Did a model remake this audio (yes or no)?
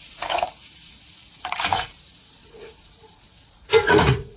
yes